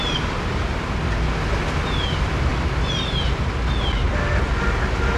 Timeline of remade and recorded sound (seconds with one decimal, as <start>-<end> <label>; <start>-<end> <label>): 0.0-5.2 recorded